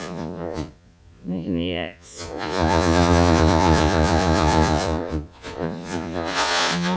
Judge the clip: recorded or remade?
remade